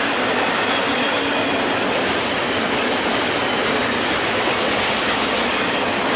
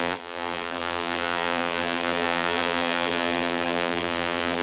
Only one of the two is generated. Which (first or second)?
second